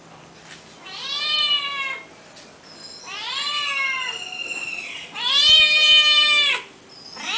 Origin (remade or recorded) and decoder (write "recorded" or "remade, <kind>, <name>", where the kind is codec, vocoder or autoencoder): recorded